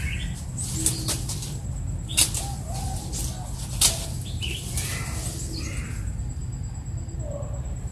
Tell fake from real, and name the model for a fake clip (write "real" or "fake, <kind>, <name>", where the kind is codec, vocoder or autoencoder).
real